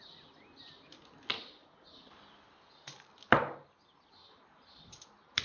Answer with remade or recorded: recorded